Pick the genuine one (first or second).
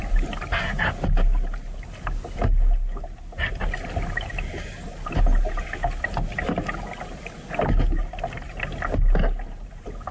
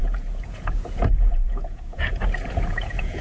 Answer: first